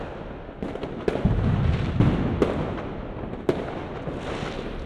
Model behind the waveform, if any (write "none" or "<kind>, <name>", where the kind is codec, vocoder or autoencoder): none